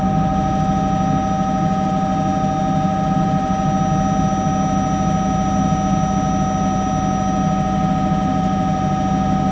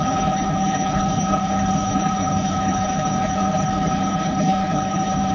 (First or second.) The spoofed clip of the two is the second